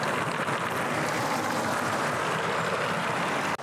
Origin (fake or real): real